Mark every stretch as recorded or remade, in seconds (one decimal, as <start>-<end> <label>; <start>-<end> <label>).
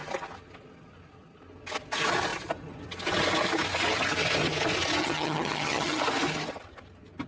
0.0-5.0 recorded; 5.0-6.0 remade; 6.0-7.3 recorded